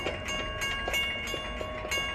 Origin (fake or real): real